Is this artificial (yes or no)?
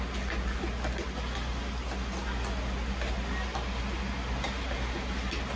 no